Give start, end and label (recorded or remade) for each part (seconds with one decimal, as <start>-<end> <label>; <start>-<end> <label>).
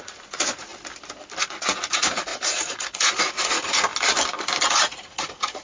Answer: 0.0-0.7 remade; 0.7-1.4 recorded; 1.4-3.9 remade; 3.9-4.7 recorded; 4.7-5.6 remade